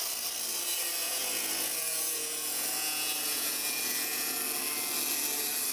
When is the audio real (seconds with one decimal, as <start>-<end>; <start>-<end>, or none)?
0.0-1.0; 4.4-5.7